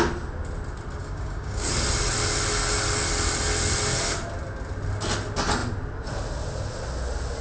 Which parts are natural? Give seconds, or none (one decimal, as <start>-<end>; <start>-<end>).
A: 0.0-1.0; 1.7-7.4